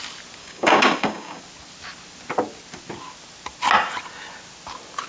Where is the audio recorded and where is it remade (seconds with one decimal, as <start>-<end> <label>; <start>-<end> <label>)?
0.0-0.4 recorded; 0.4-1.4 remade; 1.4-5.1 recorded